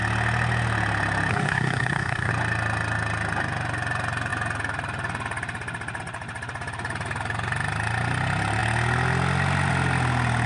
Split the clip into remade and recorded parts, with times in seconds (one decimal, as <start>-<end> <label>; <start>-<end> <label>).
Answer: 0.0-1.3 recorded; 1.3-2.3 remade; 2.3-10.5 recorded